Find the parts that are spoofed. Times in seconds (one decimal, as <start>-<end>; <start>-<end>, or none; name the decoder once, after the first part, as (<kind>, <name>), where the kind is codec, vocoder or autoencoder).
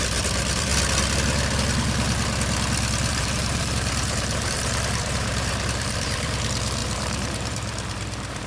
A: 0.0-0.7 (vocoder, BigVGAN v2); 3.1-8.5